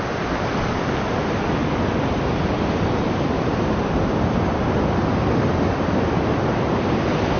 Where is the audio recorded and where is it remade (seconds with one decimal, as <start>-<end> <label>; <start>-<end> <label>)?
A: 0.0-1.6 recorded; 1.6-4.0 remade; 4.0-7.4 recorded